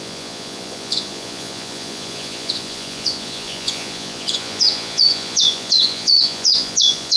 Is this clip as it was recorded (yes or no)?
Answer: no